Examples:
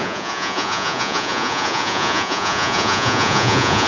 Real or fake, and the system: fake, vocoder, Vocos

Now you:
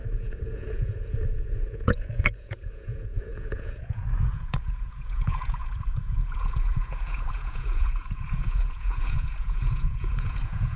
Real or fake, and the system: fake, vocoder, Vocos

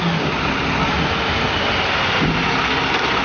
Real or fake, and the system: real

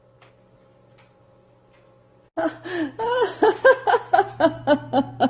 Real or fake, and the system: real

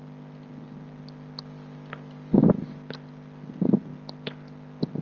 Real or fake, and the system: real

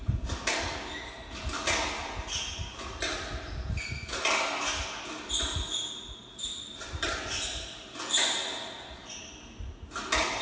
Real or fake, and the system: real